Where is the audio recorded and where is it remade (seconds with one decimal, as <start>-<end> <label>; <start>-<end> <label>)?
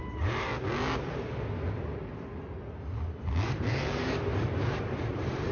0.0-0.5 remade; 0.5-3.2 recorded; 3.2-5.5 remade